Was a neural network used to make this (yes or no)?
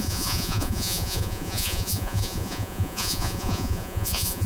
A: yes